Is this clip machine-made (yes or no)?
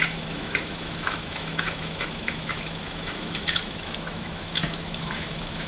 yes